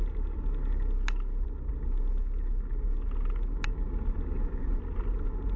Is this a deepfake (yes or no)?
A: no